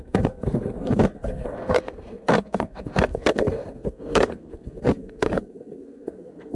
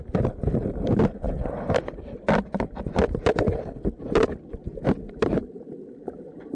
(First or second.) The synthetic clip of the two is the first